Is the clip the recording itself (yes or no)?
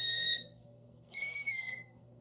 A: no